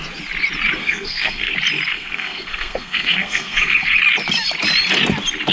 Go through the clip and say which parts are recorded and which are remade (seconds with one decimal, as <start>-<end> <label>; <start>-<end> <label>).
0.0-0.8 recorded; 0.8-1.5 remade; 1.5-1.9 recorded; 1.9-4.0 remade; 4.0-5.5 recorded